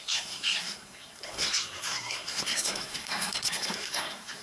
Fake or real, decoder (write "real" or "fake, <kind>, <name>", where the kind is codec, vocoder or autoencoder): fake, codec, SNAC